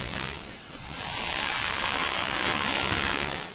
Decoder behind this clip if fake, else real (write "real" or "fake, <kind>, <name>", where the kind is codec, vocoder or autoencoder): fake, vocoder, WaveNeXt